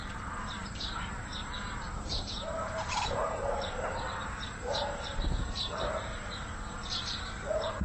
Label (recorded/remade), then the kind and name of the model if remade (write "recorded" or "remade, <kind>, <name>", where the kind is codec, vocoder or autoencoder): remade, vocoder, BigVGAN v2